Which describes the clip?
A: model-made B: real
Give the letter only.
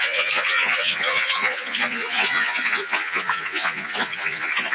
A